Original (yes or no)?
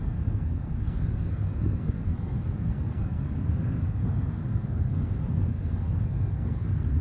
no